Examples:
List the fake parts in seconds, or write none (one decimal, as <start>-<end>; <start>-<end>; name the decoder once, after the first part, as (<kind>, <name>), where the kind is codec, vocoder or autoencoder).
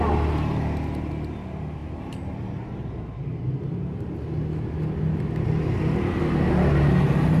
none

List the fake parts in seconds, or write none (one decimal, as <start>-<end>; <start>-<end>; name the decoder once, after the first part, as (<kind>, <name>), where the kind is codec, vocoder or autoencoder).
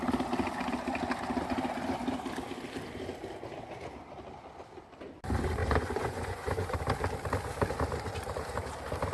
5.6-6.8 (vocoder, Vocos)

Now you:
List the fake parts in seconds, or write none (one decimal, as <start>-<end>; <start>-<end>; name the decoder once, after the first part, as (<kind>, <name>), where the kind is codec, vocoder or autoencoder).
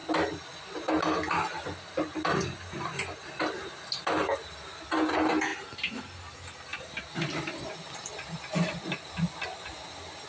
none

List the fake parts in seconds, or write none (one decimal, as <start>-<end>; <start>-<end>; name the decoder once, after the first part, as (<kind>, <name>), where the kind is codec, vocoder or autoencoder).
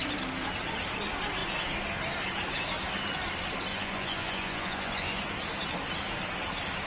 3.7-5.2 (vocoder, Vocos)